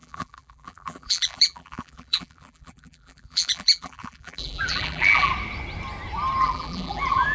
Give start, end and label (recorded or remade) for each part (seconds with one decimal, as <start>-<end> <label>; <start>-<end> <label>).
0.0-5.3 remade; 5.3-6.4 recorded; 6.4-7.3 remade